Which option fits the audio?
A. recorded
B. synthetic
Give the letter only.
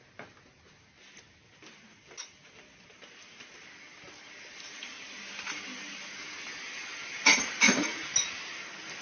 A